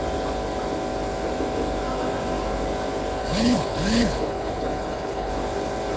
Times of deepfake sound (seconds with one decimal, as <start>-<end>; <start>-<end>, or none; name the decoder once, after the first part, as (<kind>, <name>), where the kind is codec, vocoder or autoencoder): 3.2-5.3 (codec, HILCodec)

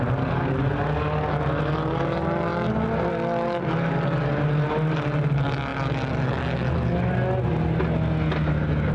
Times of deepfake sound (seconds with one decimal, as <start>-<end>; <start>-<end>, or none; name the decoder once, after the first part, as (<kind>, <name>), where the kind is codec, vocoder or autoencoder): none

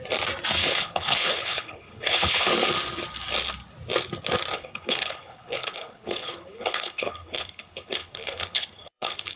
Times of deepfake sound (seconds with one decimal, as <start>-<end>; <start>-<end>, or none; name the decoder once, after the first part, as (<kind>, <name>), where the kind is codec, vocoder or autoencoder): 0.6-2.5 (codec, HILCodec); 4.5-9.4

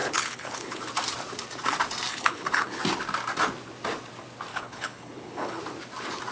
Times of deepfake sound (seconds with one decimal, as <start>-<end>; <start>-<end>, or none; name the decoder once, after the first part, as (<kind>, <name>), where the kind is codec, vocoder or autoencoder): 0.0-0.9 (codec, HILCodec); 2.1-2.8; 4.5-5.6